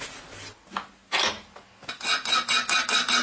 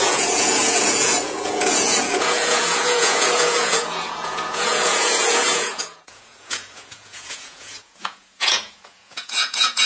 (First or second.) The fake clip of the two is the second